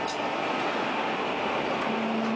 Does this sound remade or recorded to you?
recorded